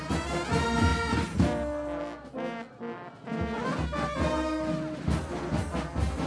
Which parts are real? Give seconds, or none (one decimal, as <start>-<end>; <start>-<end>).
0.0-6.3